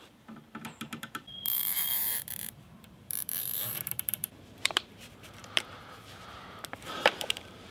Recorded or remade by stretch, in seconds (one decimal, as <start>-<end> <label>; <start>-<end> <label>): 0.0-7.7 remade